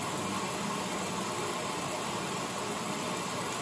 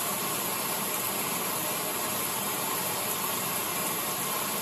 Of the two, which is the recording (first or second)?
first